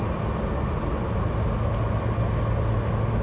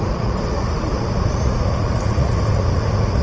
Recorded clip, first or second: first